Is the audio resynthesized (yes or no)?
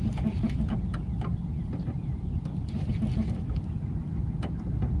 no